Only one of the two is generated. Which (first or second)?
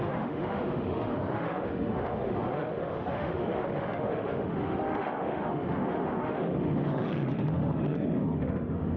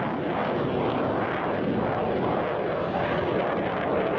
first